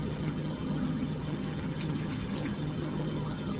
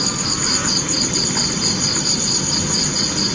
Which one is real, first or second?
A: second